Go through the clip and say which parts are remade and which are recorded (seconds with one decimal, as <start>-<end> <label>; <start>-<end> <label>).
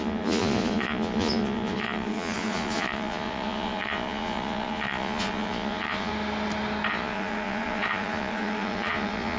0.0-6.1 remade; 6.1-6.9 recorded; 6.9-9.4 remade